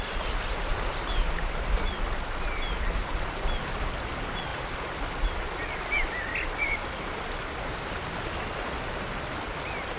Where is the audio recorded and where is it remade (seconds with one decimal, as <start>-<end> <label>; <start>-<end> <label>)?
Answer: 0.0-0.7 remade; 0.7-1.3 recorded; 1.3-10.0 remade